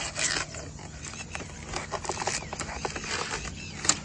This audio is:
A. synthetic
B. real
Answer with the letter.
B